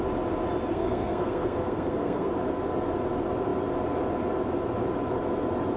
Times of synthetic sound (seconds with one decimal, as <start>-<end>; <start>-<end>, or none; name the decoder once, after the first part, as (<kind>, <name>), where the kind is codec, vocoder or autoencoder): 0.7-2.3 (codec, SNAC)